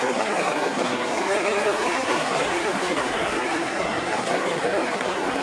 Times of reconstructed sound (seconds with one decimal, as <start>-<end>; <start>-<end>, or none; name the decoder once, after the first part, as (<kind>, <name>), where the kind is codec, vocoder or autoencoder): 0.0-5.4 (codec, SNAC)